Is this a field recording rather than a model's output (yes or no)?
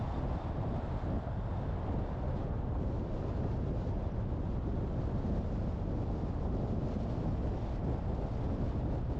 yes